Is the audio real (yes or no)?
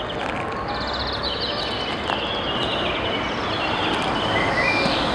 yes